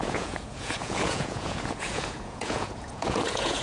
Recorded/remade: remade